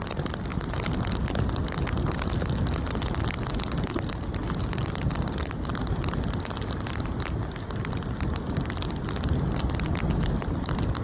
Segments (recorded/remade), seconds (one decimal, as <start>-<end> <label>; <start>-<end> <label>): 0.0-11.0 recorded